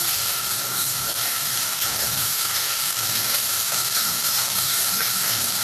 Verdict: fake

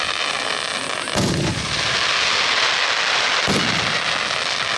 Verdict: real